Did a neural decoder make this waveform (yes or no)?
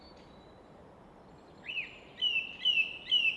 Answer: no